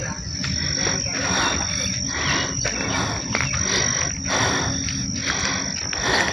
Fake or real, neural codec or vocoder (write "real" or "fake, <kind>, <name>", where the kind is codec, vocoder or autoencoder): real